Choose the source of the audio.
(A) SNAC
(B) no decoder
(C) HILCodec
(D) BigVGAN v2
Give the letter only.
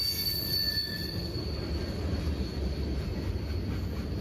B